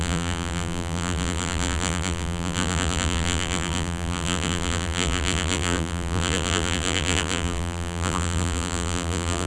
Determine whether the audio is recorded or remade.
remade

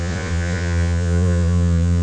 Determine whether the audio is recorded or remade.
remade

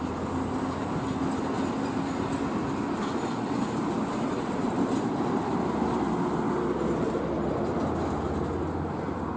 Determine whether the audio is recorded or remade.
recorded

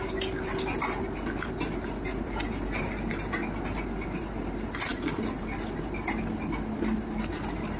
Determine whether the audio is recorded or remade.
recorded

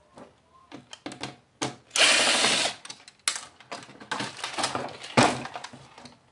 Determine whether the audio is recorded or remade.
recorded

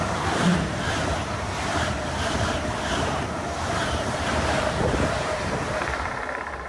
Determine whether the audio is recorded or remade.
remade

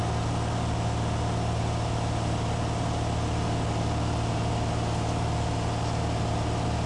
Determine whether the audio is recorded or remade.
recorded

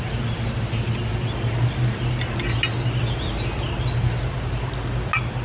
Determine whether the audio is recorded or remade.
recorded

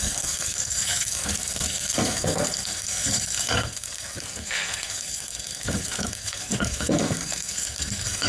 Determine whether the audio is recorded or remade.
remade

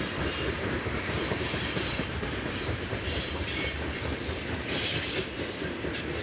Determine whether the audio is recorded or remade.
remade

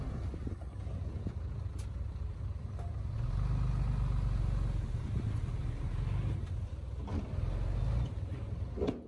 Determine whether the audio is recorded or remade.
recorded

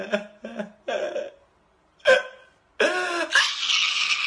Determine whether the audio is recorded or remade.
recorded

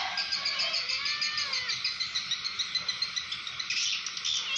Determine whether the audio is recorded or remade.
recorded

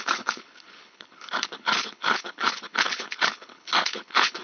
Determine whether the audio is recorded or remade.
remade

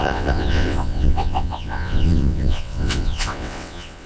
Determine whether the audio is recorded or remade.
remade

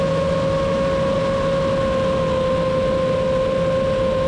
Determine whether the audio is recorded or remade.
recorded